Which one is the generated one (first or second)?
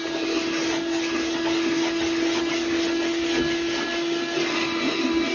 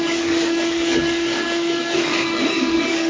second